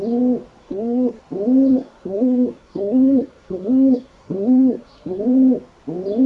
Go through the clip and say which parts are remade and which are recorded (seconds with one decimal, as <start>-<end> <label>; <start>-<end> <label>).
0.0-0.6 recorded; 0.6-1.2 remade; 1.2-1.7 recorded; 1.7-5.2 remade; 5.2-6.3 recorded